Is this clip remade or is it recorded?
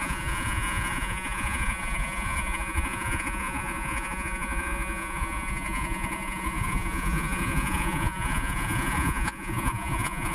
remade